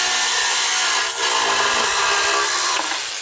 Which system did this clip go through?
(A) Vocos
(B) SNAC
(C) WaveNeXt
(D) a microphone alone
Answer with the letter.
D